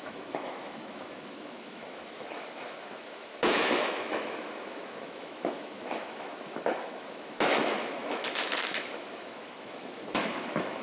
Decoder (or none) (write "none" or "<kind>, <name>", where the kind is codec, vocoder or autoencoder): autoencoder, DAC-VAE